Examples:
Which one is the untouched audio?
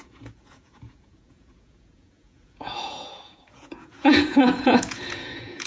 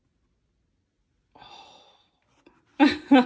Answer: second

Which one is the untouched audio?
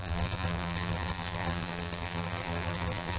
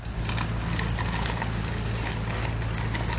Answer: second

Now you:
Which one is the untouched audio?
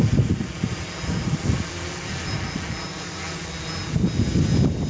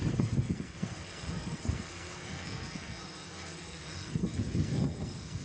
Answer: first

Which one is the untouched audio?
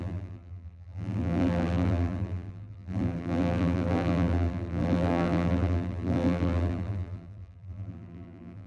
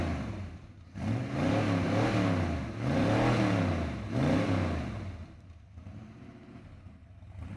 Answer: second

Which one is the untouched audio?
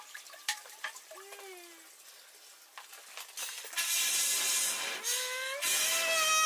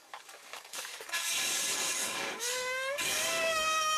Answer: first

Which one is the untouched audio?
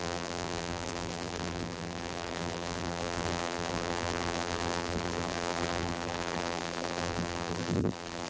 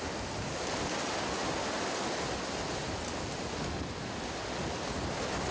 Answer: second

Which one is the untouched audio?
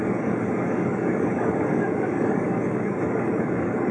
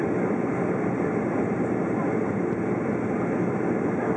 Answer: second